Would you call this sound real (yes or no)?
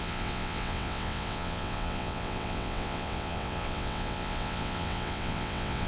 no